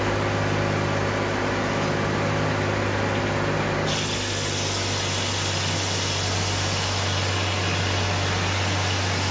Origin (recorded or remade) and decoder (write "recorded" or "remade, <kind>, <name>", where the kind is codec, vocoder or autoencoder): recorded